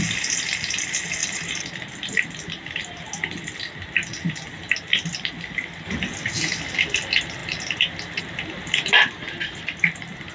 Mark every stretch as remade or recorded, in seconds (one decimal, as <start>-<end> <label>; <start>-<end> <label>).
0.0-10.3 recorded